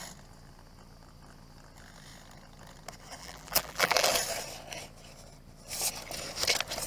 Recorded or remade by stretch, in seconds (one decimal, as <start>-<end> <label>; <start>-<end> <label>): 0.0-3.2 recorded; 3.2-4.1 remade; 4.1-6.9 recorded